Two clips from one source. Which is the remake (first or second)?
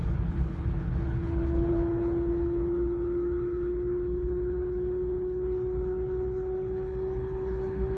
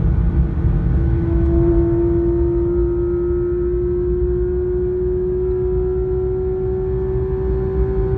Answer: first